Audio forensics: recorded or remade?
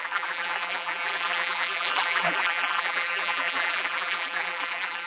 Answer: remade